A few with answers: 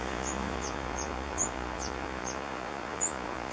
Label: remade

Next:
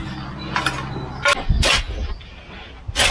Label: recorded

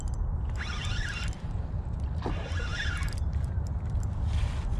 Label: recorded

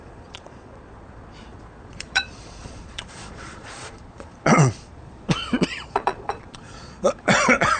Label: remade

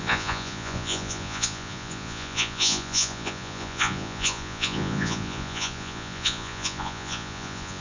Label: remade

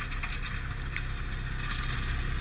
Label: recorded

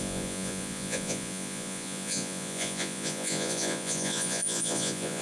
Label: remade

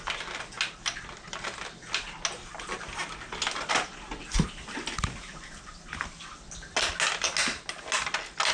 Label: recorded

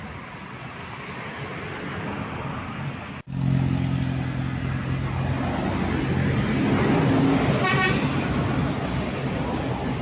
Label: recorded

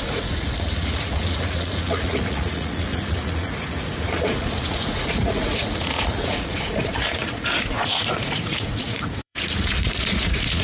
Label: remade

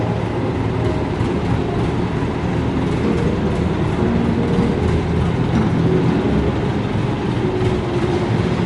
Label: recorded